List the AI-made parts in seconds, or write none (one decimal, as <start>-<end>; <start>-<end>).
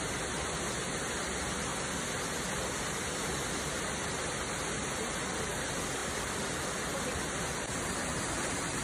none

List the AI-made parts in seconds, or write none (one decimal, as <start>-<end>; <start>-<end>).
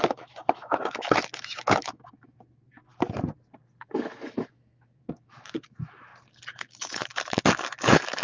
0.0-2.9; 3.8-6.1; 6.7-8.2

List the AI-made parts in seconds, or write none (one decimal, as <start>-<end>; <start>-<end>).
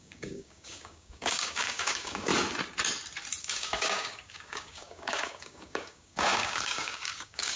0.0-2.3; 3.4-7.6